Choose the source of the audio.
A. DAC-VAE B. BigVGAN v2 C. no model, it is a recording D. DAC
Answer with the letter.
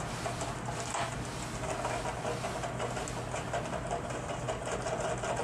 C